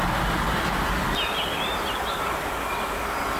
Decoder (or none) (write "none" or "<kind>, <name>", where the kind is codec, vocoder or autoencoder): none